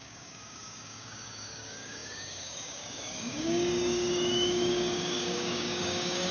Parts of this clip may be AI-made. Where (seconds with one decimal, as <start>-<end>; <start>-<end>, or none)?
0.0-6.3